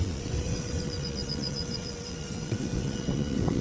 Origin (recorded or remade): remade